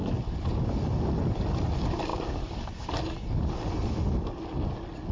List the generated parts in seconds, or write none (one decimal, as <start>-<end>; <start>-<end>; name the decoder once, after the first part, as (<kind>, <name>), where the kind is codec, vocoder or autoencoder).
none